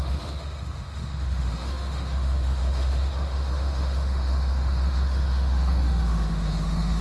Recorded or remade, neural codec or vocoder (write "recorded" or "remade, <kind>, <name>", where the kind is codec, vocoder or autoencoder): remade, autoencoder, DAC-VAE